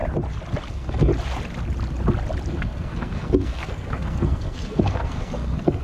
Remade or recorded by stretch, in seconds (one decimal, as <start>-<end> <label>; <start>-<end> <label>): 0.0-0.7 recorded; 0.7-1.1 remade; 1.1-2.5 recorded; 2.5-5.8 remade